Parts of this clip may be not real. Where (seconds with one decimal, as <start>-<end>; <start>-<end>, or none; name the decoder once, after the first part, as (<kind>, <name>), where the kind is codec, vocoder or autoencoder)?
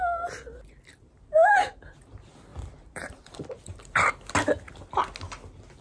0.9-1.5 (vocoder, BigVGAN v2); 2.5-4.1